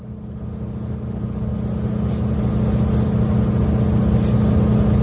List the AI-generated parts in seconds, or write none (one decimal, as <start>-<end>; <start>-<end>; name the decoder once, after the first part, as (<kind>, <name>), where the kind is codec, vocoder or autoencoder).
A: none